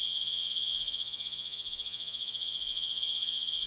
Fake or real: fake